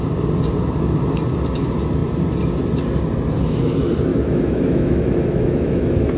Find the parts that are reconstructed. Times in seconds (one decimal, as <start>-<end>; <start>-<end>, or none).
4.1-6.2